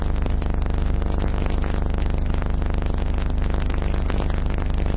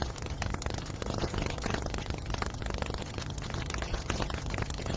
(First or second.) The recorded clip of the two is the first